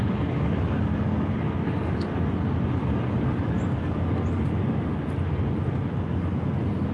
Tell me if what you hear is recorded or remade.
recorded